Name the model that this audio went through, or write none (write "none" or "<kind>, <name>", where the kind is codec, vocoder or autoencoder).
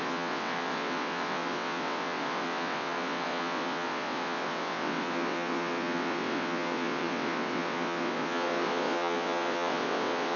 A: vocoder, WaveNeXt